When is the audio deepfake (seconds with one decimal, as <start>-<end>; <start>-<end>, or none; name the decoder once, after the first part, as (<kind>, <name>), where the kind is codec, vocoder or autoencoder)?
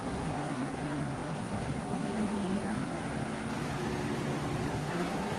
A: 0.0-3.0 (codec, SNAC); 4.7-5.4